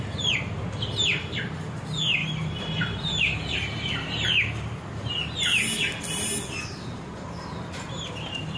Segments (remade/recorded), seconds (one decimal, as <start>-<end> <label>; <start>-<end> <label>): 0.0-2.2 recorded; 2.2-5.1 remade; 5.1-8.6 recorded